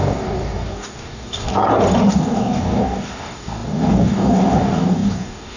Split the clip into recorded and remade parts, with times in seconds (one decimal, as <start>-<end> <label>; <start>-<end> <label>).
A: 0.0-1.5 remade; 1.5-2.1 recorded; 2.1-5.6 remade